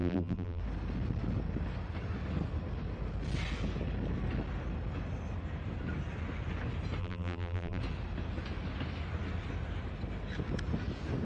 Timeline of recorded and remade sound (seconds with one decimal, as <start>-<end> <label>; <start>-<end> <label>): 0.0-0.6 remade; 0.6-7.0 recorded; 7.0-7.8 remade; 7.8-11.2 recorded